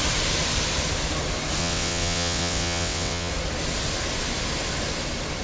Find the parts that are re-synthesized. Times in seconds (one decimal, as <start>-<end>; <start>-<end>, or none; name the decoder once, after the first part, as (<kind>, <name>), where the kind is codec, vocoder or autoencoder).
1.6-3.3 (vocoder, WaveNeXt)